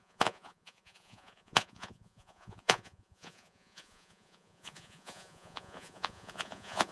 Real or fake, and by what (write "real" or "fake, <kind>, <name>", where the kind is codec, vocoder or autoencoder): fake, vocoder, Vocos